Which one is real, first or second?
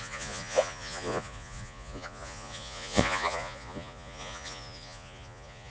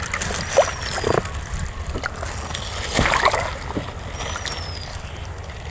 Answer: second